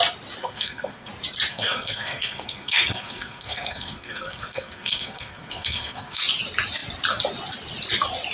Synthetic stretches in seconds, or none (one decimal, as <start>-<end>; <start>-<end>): 0.4-1.1; 1.5-6.2